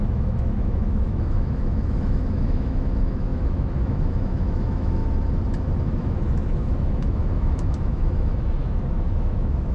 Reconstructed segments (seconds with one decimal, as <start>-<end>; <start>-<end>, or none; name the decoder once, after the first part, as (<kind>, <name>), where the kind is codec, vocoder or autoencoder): 0.0-5.0 (autoencoder, DAC-VAE); 5.8-9.7